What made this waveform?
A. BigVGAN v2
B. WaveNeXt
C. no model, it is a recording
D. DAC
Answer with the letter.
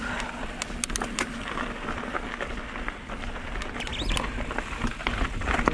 C